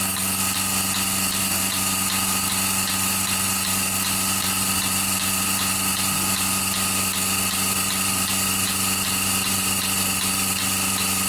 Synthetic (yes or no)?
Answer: no